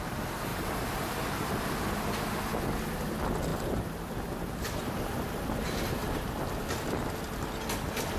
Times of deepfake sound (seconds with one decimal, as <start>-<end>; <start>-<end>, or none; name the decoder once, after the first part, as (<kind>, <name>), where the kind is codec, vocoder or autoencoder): 0.5-2.0 (vocoder, BigVGAN v2); 3.5-4.1; 6.0-6.6